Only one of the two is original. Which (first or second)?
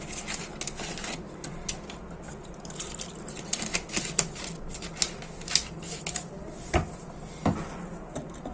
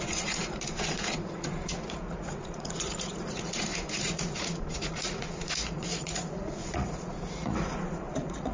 first